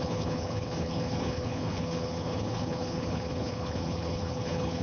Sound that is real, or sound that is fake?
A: fake